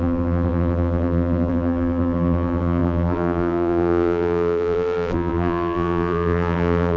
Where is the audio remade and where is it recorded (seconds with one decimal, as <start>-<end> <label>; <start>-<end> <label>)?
0.0-7.0 remade